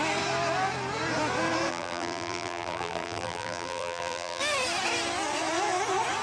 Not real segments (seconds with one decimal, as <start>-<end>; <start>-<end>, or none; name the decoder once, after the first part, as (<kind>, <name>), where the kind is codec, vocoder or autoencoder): 1.7-4.4 (vocoder, BigVGAN v2)